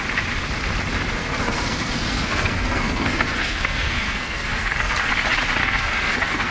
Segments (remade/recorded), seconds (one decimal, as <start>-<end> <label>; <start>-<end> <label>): 0.0-1.2 recorded; 1.2-5.1 remade; 5.1-5.6 recorded; 5.6-6.5 remade